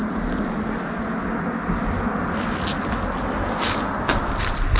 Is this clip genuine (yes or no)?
yes